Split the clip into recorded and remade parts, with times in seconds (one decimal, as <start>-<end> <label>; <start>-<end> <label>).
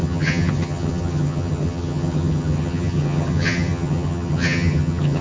0.0-5.2 remade